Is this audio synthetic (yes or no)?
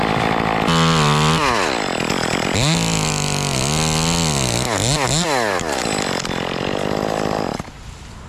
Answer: no